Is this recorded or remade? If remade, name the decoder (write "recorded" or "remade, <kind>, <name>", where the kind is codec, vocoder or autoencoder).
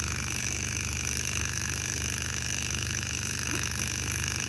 remade, autoencoder, DAC-VAE